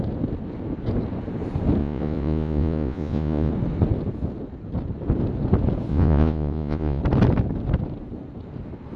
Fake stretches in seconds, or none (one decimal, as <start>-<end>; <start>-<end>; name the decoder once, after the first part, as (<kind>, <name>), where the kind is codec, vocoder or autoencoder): 1.8-3.5 (vocoder, Vocos); 5.9-7.0